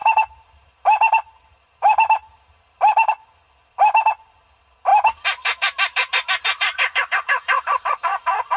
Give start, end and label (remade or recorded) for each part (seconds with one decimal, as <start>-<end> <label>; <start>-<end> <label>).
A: 0.0-3.1 remade; 3.1-4.9 recorded; 4.9-8.6 remade